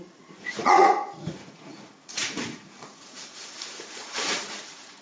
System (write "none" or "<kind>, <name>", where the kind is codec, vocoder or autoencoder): vocoder, Vocos